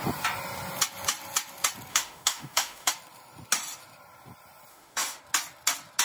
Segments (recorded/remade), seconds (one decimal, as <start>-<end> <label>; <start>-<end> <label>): 0.0-1.9 recorded; 1.9-2.9 remade; 2.9-4.7 recorded; 4.7-5.2 remade; 5.2-6.0 recorded